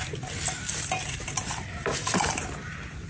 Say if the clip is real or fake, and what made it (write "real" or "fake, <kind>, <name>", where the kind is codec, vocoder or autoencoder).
fake, vocoder, BigVGAN v2